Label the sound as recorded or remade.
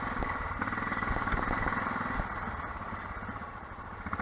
recorded